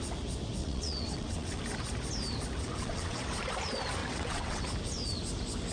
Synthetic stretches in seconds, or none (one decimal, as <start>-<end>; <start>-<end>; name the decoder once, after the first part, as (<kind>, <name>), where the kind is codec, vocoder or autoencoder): 0.6-1.6 (vocoder, WaveNeXt); 2.6-3.3; 4.0-4.6